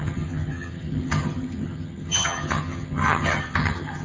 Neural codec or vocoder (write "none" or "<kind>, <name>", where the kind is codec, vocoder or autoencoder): vocoder, HiFi-GAN